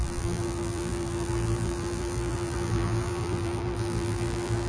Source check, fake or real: fake